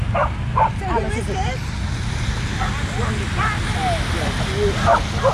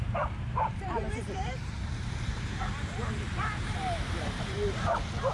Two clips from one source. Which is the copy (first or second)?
second